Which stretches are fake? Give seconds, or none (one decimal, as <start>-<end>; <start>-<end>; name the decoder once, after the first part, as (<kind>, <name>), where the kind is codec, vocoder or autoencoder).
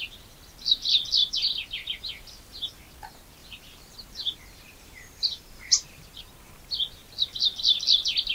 3.4-6.2 (vocoder, BigVGAN v2)